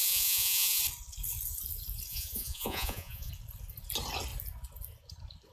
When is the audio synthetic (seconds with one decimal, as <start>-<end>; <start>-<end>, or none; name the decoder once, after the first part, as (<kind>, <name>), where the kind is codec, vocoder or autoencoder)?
0.0-0.8 (vocoder, Vocos); 2.1-3.3